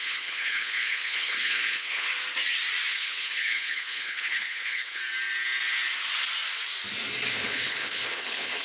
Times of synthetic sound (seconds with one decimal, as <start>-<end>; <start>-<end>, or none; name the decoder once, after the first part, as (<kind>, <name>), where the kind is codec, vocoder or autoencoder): 0.0-2.1 (codec, HILCodec); 2.9-5.0; 7.3-8.6